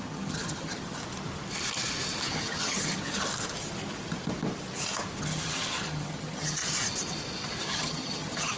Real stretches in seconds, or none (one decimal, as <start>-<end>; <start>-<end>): 1.0-2.3; 3.3-5.2; 6.6-7.6

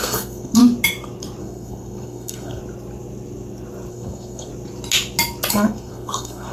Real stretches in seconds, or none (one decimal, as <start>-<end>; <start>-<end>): 0.6-1.4; 2.6-3.9; 4.5-5.5

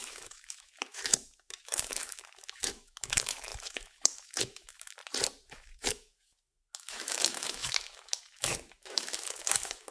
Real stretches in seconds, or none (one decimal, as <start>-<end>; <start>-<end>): 5.0-5.5

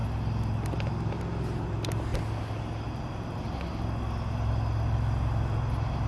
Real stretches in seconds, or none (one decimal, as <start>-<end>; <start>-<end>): 0.0-6.1

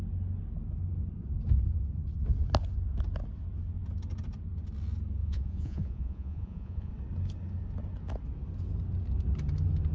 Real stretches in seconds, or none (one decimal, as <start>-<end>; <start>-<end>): 0.0-5.2; 6.9-9.9

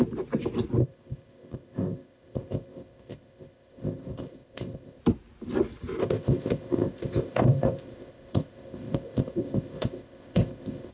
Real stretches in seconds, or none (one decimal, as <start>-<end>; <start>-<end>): 0.0-0.8; 5.0-6.0

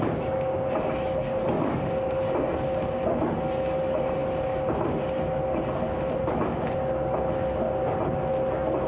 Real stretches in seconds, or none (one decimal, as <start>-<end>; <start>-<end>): 0.0-8.9

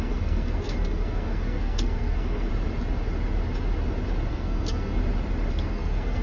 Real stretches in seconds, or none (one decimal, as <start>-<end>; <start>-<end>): 2.5-4.3; 5.0-5.5